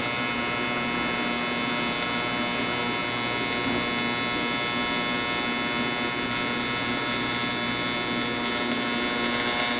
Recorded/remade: recorded